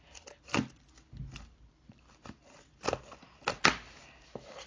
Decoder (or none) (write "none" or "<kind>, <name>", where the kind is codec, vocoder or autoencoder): none